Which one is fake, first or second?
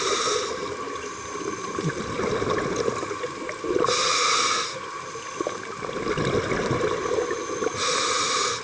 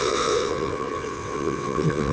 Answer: second